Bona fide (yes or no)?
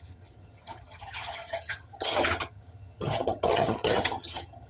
no